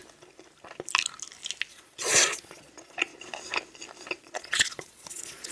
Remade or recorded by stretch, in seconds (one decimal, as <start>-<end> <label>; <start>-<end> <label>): 0.0-1.7 recorded; 1.7-3.1 remade; 3.1-4.2 recorded; 4.2-5.5 remade